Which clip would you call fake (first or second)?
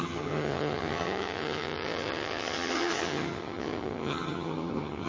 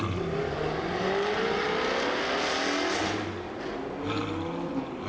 first